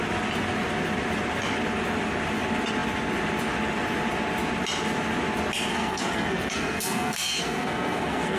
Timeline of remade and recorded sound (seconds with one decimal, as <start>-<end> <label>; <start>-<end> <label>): 0.0-5.7 recorded; 5.7-8.4 remade

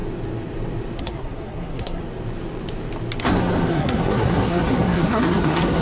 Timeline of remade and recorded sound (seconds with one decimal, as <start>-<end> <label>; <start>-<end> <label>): 0.0-1.0 recorded; 1.0-2.0 remade; 2.0-3.7 recorded; 3.7-5.8 remade

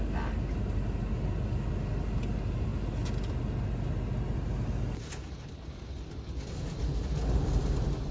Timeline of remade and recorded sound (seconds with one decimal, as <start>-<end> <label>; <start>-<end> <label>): 0.0-8.1 recorded

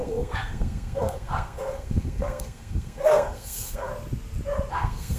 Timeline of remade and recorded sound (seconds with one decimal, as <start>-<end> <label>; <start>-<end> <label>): 0.0-3.9 remade; 3.9-4.7 recorded; 4.7-5.2 remade

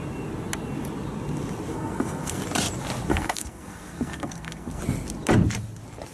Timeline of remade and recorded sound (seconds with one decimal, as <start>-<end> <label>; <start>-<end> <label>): 0.0-1.7 recorded; 1.7-2.4 remade; 2.4-3.1 recorded; 3.1-4.8 remade; 4.8-6.1 recorded

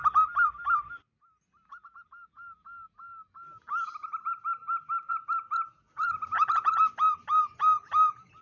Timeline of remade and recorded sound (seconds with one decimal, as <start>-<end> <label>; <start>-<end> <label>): 0.0-8.4 recorded

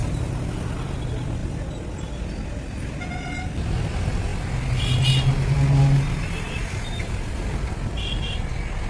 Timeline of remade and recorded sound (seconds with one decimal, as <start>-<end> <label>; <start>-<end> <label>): 0.0-8.9 recorded

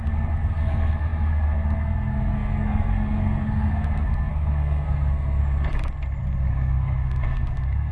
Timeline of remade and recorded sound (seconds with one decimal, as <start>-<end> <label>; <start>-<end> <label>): 0.0-5.4 remade; 5.4-6.5 recorded; 6.5-7.9 remade